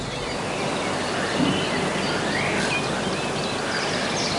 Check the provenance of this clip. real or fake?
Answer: real